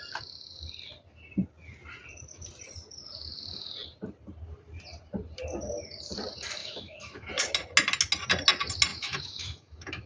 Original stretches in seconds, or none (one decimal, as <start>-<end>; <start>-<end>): 0.0-6.6; 7.3-8.9